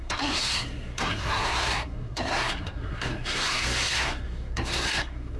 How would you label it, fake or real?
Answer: fake